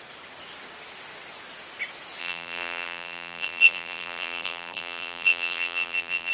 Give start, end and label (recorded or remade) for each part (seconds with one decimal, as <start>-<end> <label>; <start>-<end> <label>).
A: 0.0-2.2 recorded; 2.2-6.3 remade